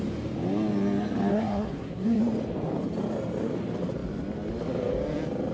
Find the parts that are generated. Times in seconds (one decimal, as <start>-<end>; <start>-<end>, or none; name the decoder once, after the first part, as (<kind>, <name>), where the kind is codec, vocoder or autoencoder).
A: 1.3-2.2 (codec, SNAC)